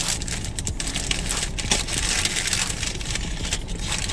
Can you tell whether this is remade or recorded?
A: recorded